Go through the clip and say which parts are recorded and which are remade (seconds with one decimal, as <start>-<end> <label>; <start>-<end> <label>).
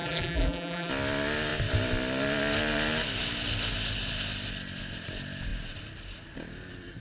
0.0-0.9 remade; 0.9-7.0 recorded